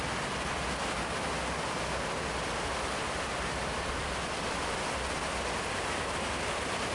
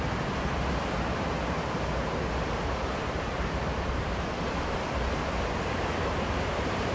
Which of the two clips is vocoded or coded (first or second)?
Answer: second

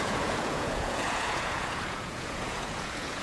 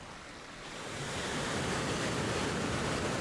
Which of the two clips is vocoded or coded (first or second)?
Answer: first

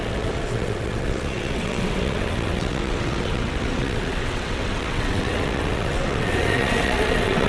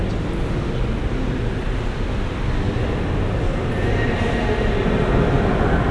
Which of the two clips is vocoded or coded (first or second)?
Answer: first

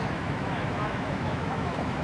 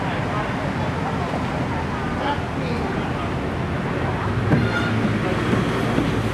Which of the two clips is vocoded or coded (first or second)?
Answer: first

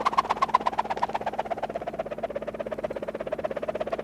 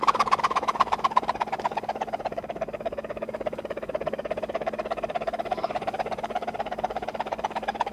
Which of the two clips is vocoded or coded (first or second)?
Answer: second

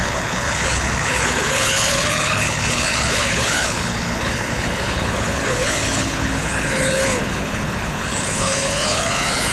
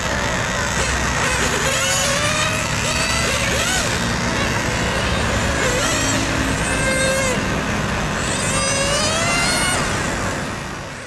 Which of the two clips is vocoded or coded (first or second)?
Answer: first